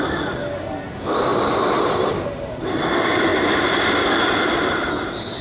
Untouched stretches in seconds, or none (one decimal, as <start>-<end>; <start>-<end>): 0.0-5.4